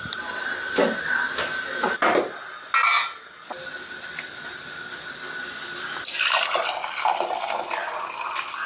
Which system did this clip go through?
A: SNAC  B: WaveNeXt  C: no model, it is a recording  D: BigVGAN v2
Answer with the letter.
C